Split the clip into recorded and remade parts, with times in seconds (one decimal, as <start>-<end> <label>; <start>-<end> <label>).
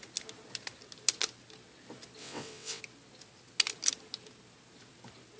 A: 0.0-2.2 recorded; 2.2-2.8 remade; 2.8-5.4 recorded